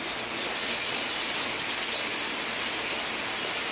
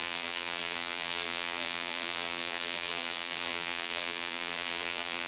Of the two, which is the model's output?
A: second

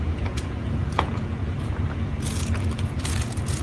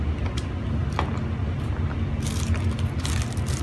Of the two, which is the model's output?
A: first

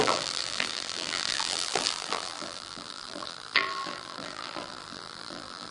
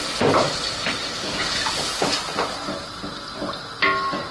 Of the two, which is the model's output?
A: first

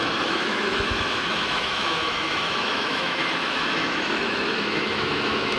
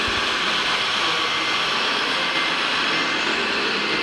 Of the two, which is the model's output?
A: first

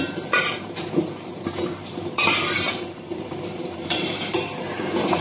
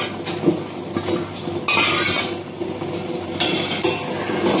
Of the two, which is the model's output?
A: first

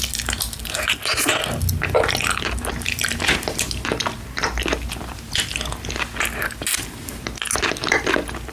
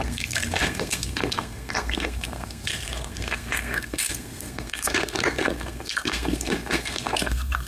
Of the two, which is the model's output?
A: second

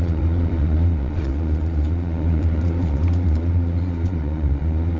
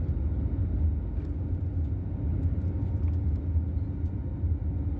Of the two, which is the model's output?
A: first